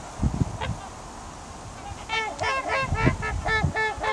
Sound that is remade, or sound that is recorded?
recorded